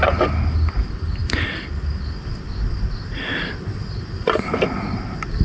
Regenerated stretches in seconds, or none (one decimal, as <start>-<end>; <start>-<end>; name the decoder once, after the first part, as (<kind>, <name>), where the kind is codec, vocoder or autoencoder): none